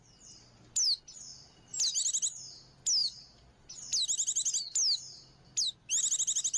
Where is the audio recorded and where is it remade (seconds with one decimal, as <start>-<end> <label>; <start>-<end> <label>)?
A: 0.0-6.6 recorded